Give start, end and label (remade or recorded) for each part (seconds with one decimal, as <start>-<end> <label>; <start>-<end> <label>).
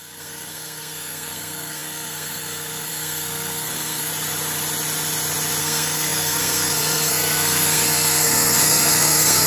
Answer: 0.0-4.1 remade; 4.1-5.6 recorded; 5.6-9.5 remade